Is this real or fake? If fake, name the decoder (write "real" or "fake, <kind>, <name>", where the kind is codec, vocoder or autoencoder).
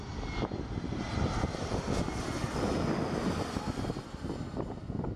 real